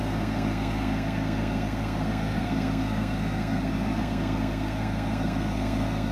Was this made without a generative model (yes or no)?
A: no